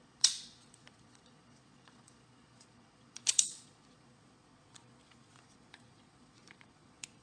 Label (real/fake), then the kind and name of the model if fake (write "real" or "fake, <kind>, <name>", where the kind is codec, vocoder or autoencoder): fake, vocoder, Vocos